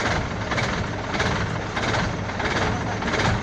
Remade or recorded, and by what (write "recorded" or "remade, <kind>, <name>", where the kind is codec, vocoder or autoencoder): recorded